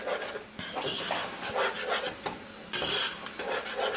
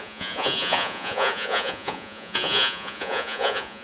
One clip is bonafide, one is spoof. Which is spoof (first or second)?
second